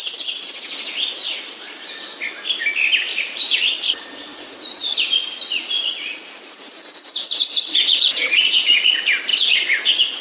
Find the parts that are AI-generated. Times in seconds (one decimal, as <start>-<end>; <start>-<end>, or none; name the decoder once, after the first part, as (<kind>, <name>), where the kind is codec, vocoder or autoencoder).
3.1-3.6 (vocoder, Vocos); 4.3-8.9; 9.3-10.2